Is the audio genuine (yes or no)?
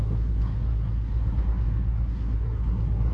no